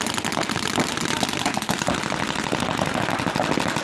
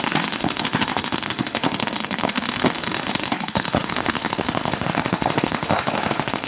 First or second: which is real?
first